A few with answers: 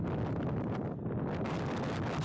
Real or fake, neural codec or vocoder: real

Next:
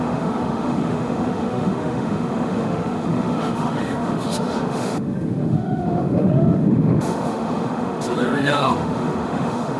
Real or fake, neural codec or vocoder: fake, autoencoder, DAC-VAE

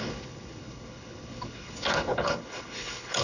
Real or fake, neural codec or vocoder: fake, codec, HILCodec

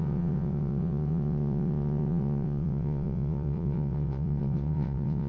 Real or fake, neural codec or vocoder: fake, vocoder, WaveNeXt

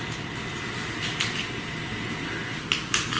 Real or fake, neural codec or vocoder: real